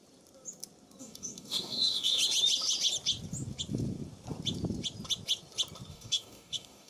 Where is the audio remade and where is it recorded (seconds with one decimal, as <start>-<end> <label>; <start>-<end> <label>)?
0.0-1.0 recorded; 1.0-2.2 remade; 2.2-5.9 recorded; 5.9-6.9 remade